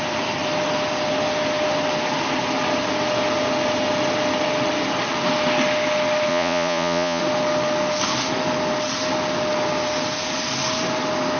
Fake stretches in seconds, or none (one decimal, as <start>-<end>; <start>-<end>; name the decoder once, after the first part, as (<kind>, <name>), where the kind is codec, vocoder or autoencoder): 6.3-7.2 (vocoder, Vocos)